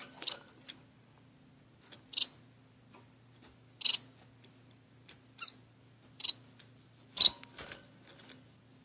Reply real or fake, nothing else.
real